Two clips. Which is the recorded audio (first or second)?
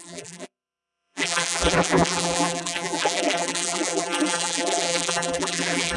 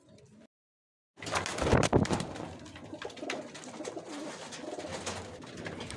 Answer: second